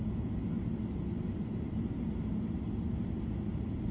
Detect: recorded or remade recorded